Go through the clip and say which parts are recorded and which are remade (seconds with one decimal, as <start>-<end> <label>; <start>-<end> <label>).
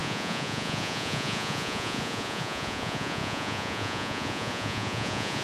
0.0-5.4 remade